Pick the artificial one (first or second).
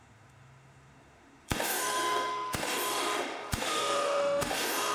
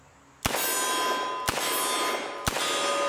first